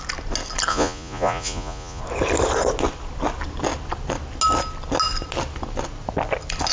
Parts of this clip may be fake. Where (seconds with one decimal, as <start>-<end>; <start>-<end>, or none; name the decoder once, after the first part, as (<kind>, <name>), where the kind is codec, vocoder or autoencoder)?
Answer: 0.7-2.0 (vocoder, Vocos)